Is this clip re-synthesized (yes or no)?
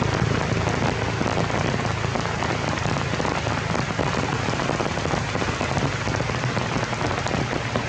no